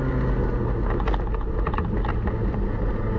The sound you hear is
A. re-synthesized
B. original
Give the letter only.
B